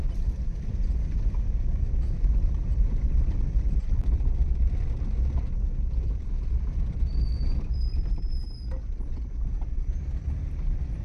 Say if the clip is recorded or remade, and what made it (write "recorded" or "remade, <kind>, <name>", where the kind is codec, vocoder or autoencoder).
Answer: remade, vocoder, BigVGAN v2